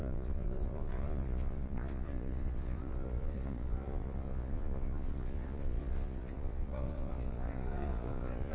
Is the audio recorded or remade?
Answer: remade